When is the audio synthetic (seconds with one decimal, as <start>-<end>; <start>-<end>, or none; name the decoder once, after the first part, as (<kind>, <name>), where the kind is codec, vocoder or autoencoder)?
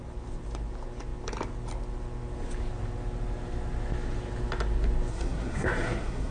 5.1-6.3 (codec, SNAC)